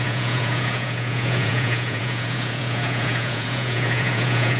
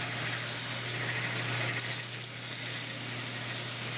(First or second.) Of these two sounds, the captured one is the second